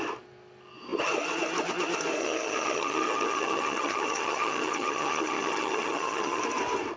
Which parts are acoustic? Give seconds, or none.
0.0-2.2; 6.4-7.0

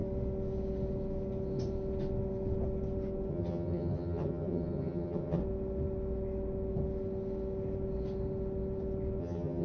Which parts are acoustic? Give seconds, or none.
0.0-3.3; 5.4-9.2

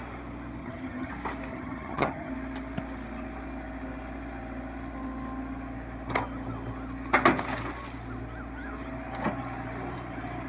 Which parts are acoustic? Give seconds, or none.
0.0-0.6; 1.1-1.5; 2.3-10.5

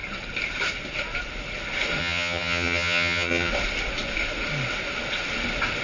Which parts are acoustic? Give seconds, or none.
0.0-2.0; 3.5-5.8

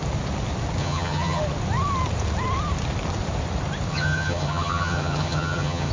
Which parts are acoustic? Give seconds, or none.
0.0-0.8; 1.4-3.9

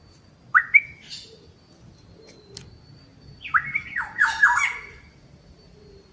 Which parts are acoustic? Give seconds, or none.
0.0-6.1